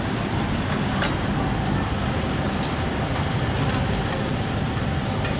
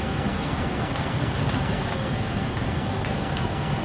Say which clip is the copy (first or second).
second